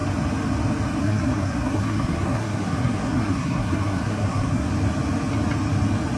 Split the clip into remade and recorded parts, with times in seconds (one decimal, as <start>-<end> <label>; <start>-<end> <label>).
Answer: 0.0-1.0 recorded; 1.0-4.7 remade; 4.7-6.2 recorded